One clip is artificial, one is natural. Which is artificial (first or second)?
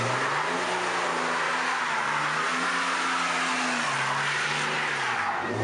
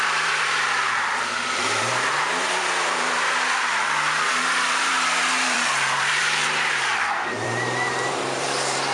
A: second